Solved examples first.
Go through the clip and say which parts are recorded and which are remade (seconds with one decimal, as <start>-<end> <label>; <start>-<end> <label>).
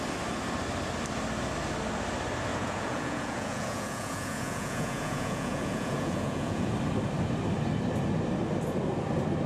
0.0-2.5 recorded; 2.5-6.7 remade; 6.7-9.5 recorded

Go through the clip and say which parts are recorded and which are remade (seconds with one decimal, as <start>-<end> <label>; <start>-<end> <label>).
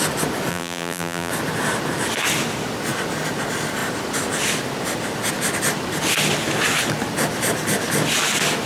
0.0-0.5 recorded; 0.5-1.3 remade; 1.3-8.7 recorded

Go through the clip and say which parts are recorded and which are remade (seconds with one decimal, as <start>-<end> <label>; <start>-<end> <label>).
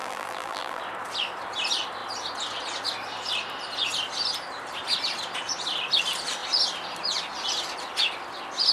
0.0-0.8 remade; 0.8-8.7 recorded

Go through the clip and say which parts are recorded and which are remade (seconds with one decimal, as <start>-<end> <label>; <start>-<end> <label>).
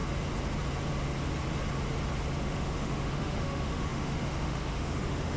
0.0-2.4 recorded; 2.4-5.4 remade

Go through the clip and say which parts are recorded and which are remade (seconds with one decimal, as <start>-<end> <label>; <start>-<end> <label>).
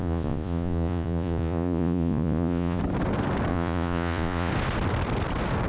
0.0-2.8 remade; 2.8-3.5 recorded; 3.5-4.5 remade; 4.5-5.7 recorded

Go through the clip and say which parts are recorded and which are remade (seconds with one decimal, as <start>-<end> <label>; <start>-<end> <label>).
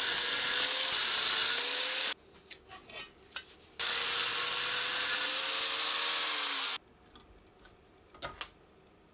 0.0-9.1 recorded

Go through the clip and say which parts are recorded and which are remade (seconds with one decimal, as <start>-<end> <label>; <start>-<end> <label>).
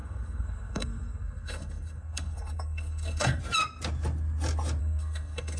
0.0-3.4 remade; 3.4-4.8 recorded; 4.8-5.6 remade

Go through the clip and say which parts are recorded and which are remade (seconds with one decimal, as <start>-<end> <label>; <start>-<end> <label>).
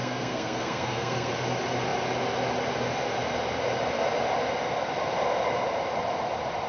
0.0-1.3 remade; 1.3-6.7 recorded